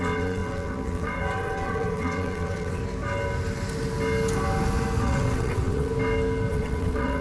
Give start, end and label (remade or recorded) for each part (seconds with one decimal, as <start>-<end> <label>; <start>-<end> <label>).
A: 0.0-2.8 remade; 2.8-5.0 recorded; 5.0-5.9 remade; 5.9-6.5 recorded; 6.5-7.2 remade